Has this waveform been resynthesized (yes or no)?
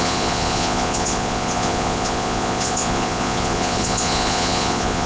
yes